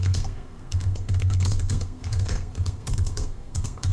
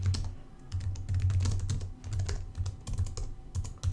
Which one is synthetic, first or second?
first